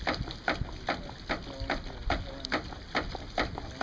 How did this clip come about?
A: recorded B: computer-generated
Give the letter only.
A